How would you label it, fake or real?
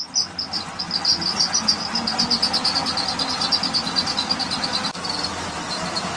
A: real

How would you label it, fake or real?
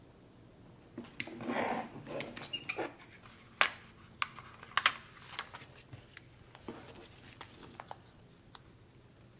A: real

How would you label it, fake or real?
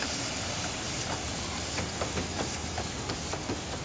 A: real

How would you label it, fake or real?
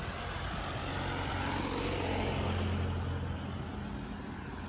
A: real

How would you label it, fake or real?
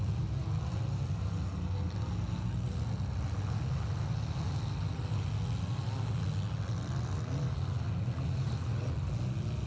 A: real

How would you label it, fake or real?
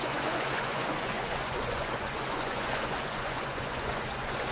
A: fake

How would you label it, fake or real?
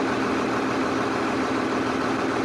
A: real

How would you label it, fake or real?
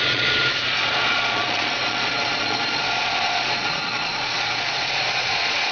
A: fake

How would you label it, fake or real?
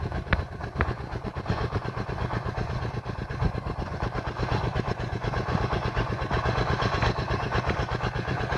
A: fake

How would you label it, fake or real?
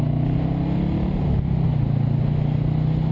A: real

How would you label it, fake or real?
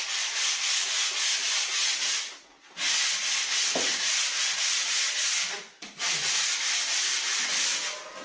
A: real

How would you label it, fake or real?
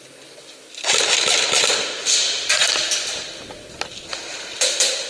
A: real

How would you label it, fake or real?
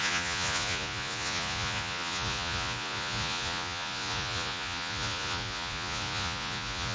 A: fake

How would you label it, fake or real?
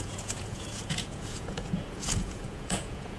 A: fake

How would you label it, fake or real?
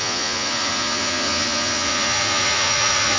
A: fake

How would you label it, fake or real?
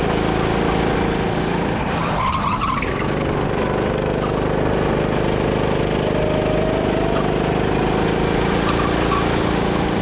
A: real